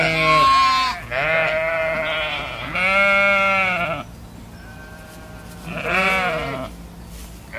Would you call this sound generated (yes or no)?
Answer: no